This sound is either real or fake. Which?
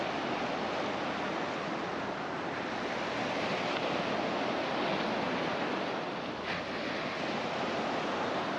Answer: real